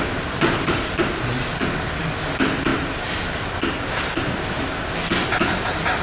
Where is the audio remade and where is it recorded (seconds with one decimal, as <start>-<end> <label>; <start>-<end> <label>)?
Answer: 0.0-6.0 recorded